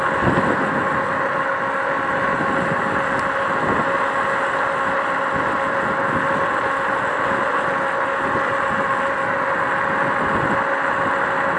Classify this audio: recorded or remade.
recorded